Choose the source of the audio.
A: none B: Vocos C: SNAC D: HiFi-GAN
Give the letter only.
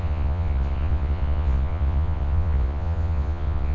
B